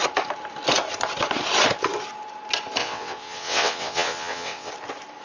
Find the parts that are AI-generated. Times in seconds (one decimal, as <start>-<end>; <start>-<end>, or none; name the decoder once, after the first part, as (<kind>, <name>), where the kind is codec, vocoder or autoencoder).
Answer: 2.8-4.7 (vocoder, WaveNeXt)

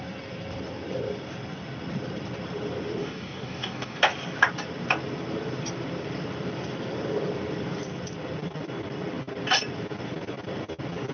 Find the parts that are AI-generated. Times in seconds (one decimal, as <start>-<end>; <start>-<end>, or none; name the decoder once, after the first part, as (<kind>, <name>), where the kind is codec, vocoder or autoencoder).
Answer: 3.0-4.0 (codec, DAC)

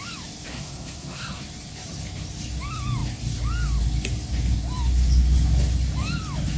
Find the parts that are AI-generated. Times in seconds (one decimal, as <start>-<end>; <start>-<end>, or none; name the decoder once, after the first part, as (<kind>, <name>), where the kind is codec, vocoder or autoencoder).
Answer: 0.5-1.4 (codec, SNAC)